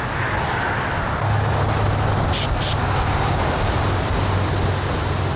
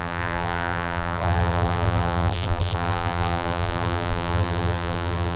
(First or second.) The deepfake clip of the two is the second